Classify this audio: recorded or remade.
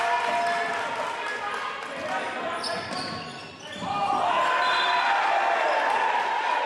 recorded